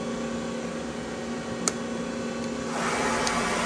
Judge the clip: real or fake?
real